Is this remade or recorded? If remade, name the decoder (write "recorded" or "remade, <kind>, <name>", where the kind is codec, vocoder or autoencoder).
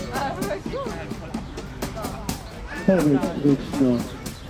recorded